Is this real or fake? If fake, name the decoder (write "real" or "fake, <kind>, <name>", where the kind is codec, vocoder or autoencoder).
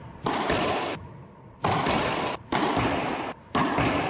fake, vocoder, BigVGAN v2